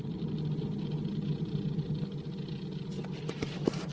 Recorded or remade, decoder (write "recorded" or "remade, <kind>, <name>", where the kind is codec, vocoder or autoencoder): recorded